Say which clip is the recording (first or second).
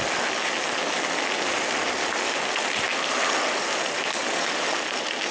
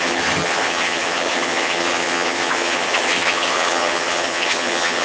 first